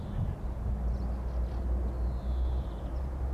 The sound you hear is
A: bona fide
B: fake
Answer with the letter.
A